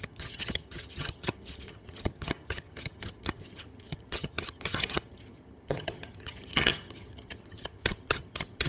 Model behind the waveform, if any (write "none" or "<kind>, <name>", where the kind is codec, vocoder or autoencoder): vocoder, HiFi-GAN